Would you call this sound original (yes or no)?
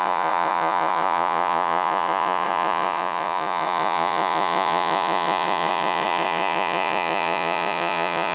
no